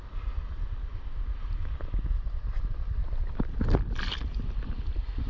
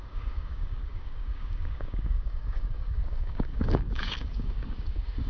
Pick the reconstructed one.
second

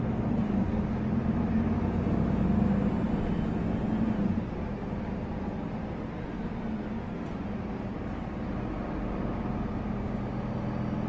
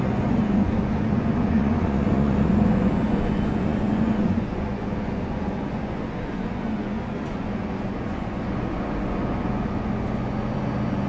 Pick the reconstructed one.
second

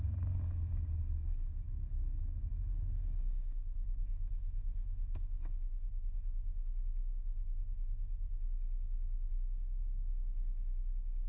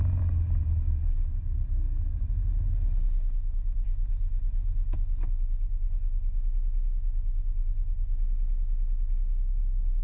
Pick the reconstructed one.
first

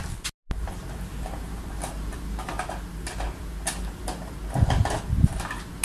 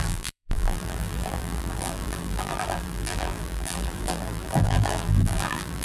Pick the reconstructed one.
second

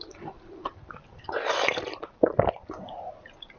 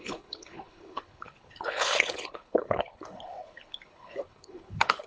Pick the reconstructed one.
second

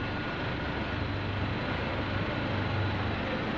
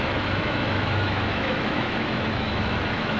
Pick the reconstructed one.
second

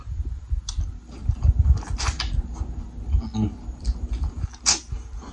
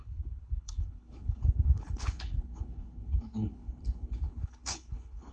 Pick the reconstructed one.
second